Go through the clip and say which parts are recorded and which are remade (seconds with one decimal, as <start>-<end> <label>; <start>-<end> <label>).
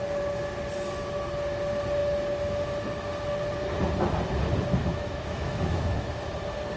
0.0-4.8 recorded; 4.8-6.3 remade; 6.3-6.8 recorded